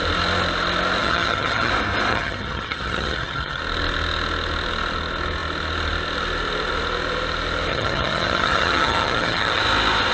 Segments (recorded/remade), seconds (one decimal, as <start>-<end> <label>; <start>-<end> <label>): 0.0-1.0 recorded; 1.0-1.7 remade; 1.7-2.1 recorded; 2.1-3.6 remade; 3.6-7.7 recorded; 7.7-9.6 remade; 9.6-10.1 recorded